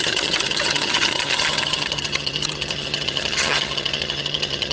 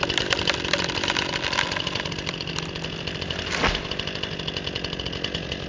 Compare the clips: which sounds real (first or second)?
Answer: second